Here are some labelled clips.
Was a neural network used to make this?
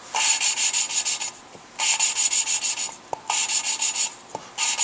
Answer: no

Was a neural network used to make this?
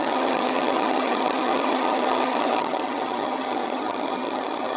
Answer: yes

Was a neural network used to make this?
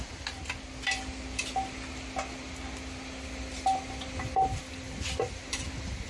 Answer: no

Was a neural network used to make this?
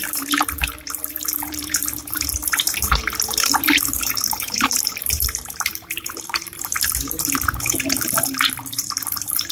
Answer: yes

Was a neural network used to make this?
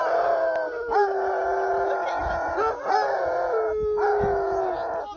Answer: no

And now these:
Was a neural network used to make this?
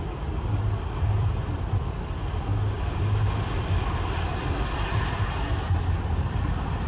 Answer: no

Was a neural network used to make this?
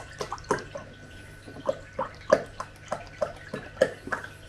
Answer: no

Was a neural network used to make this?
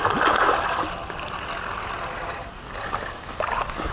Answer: no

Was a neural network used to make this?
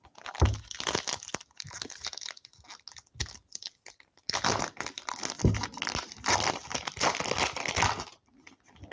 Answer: no